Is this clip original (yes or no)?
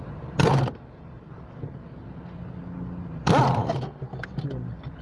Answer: yes